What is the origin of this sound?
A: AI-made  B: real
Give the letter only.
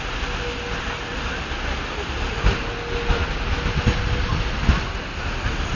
B